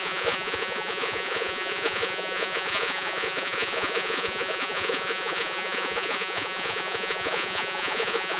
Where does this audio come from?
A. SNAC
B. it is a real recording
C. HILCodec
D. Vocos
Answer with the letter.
D